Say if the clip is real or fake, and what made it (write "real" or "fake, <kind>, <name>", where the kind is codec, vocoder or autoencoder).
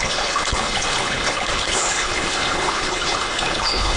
fake, codec, HILCodec